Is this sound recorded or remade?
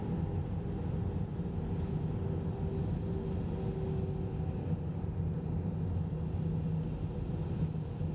recorded